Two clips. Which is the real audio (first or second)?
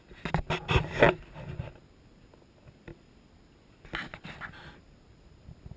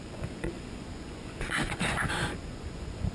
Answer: first